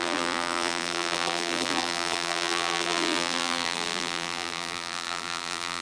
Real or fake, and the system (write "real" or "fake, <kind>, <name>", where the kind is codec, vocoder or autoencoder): fake, vocoder, BigVGAN v2